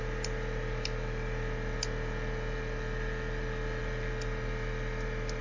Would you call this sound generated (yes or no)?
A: no